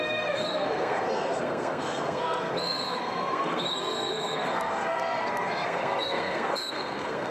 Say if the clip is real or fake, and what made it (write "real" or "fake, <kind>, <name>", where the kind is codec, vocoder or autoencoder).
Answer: fake, codec, SNAC